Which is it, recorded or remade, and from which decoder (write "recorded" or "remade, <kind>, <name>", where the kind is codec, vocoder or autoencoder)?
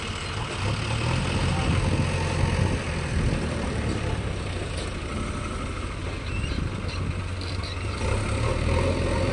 recorded